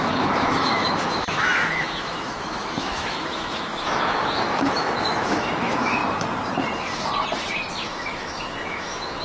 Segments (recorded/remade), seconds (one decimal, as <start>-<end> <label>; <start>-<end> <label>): 0.0-6.0 remade; 6.0-7.7 recorded; 7.7-9.2 remade